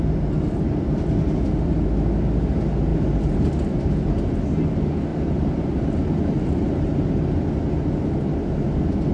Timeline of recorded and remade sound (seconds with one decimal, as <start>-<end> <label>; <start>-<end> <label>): 0.0-2.9 recorded; 2.9-3.5 remade; 3.5-5.1 recorded; 5.1-7.1 remade; 7.1-9.1 recorded